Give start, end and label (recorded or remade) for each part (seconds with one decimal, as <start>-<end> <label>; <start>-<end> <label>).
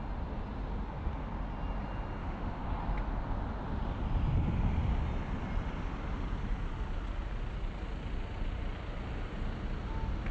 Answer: 0.0-2.2 recorded; 2.2-2.7 remade; 2.7-10.3 recorded